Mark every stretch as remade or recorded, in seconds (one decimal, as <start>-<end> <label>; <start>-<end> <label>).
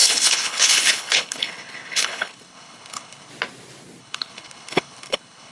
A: 0.0-3.3 remade; 3.3-4.0 recorded; 4.0-5.5 remade